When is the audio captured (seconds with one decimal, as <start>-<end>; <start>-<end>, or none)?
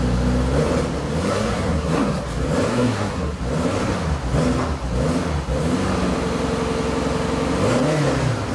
0.0-1.2; 2.2-2.7; 3.4-8.5